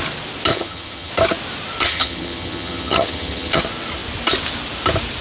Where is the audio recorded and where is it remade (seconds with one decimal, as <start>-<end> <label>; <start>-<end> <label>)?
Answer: 0.0-0.5 recorded; 0.5-1.1 remade; 1.1-1.8 recorded; 1.8-3.6 remade; 3.6-5.2 recorded